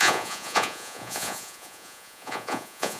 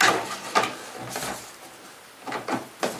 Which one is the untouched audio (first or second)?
second